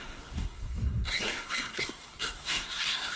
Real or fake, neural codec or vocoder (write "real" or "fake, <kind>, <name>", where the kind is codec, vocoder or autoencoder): fake, codec, SNAC